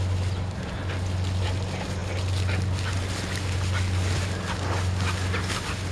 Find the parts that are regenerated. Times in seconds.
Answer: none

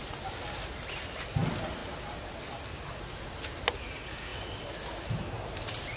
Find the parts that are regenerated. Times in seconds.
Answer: none

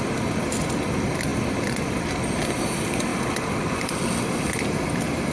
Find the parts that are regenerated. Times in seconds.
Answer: none

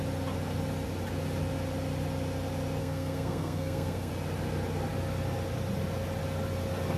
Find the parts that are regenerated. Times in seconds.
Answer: 2.8-4.1 (codec, SNAC)

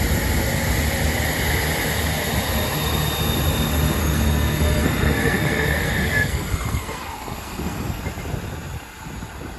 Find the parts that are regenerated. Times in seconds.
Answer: 4.0-8.0 (codec, SNAC)

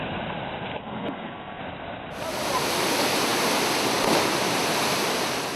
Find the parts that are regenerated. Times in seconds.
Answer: 0.8-1.6 (codec, SNAC)